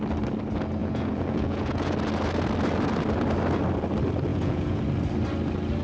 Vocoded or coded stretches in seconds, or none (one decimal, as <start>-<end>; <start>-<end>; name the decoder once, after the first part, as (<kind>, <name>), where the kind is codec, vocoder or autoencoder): 0.8-1.9 (vocoder, Vocos); 4.3-4.8